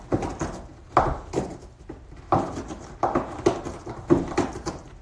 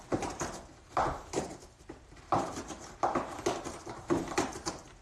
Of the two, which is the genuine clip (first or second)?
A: first